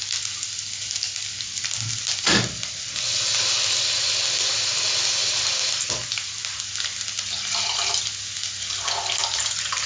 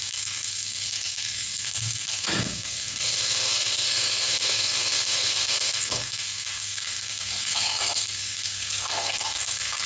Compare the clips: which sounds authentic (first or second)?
first